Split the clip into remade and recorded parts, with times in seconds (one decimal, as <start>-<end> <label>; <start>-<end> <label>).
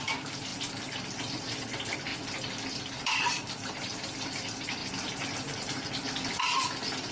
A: 0.0-0.5 remade; 0.5-1.1 recorded; 1.1-2.1 remade; 2.1-2.9 recorded; 2.9-4.8 remade; 4.8-6.4 recorded; 6.4-7.1 remade